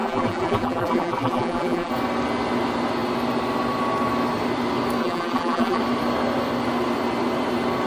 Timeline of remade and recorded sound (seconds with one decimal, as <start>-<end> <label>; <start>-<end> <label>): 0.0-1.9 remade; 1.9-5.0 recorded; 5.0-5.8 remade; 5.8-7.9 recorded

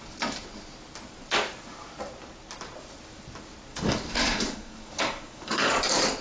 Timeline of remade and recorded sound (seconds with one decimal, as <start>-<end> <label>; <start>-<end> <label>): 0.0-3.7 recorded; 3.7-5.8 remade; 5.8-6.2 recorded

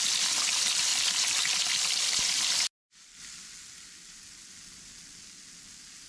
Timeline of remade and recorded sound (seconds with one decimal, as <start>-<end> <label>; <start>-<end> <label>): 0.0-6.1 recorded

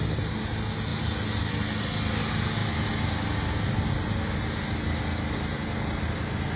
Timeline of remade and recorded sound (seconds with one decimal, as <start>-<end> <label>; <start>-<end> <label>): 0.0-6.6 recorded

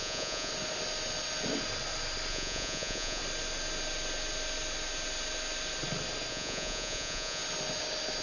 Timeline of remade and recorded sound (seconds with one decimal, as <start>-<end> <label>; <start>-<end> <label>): 0.0-0.5 remade; 0.5-2.3 recorded; 2.3-3.2 remade; 3.2-6.3 recorded; 6.3-7.4 remade; 7.4-8.2 recorded